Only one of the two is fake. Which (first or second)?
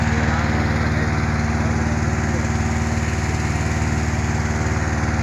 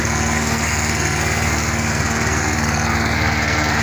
second